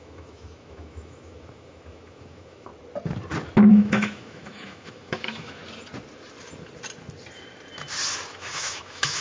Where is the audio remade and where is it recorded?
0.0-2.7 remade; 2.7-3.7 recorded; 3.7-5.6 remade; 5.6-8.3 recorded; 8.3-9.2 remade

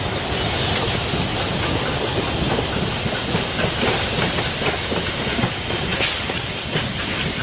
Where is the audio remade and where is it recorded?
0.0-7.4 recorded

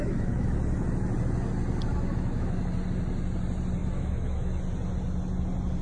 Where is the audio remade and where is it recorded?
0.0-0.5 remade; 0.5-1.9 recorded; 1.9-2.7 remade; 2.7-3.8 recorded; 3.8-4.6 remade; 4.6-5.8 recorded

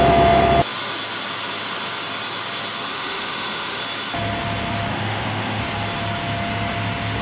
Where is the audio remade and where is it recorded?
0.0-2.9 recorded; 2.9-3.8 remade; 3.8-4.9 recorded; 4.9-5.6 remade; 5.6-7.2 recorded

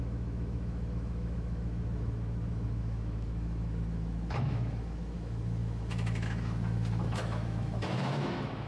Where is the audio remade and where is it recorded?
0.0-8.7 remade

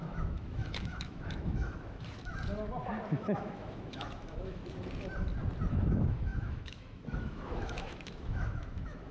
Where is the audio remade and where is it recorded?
0.0-2.3 remade; 2.3-3.1 recorded; 3.1-4.6 remade; 4.6-5.7 recorded; 5.7-9.1 remade

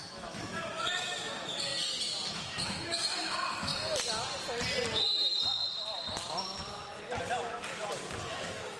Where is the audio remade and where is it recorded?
0.0-1.7 remade; 1.7-2.3 recorded; 2.3-3.7 remade; 3.7-8.3 recorded; 8.3-8.8 remade